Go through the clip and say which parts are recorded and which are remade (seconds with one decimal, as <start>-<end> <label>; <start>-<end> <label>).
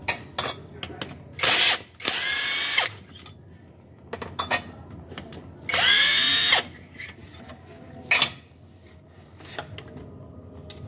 0.0-5.9 recorded; 5.9-6.5 remade; 6.5-10.9 recorded